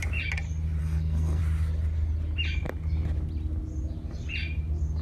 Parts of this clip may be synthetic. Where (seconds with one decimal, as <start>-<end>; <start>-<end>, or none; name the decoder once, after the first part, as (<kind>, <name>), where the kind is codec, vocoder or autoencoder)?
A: 0.8-1.4 (codec, SNAC)